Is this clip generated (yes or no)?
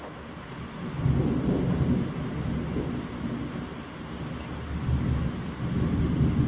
no